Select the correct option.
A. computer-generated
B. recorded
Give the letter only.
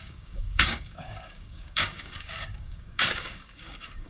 A